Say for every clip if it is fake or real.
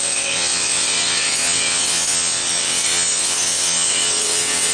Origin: fake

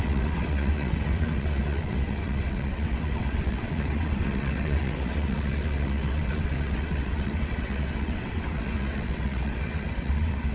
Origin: fake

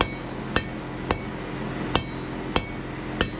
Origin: real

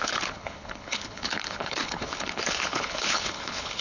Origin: fake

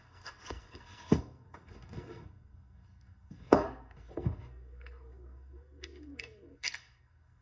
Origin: fake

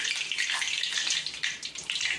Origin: real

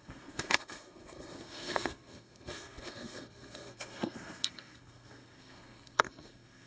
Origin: fake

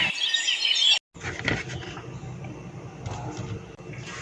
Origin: real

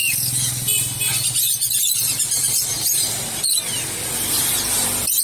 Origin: real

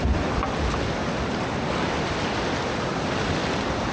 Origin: real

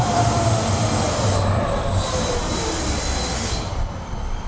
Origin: fake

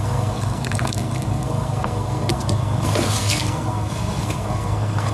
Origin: fake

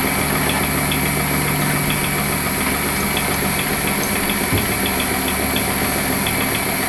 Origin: real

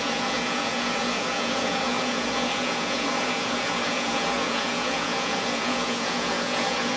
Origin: fake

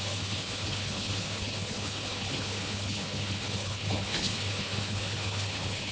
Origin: fake